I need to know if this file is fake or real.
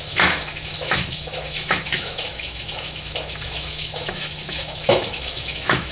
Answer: fake